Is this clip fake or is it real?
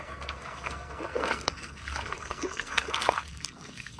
fake